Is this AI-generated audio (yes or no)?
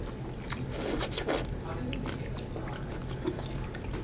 no